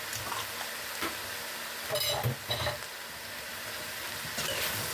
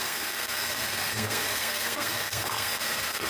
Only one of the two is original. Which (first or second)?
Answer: first